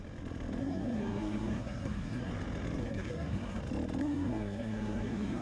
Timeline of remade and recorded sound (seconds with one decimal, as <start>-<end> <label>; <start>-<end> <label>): 0.0-0.6 recorded; 0.6-2.3 remade; 2.3-2.8 recorded; 2.8-3.6 remade; 3.6-4.0 recorded; 4.0-5.4 remade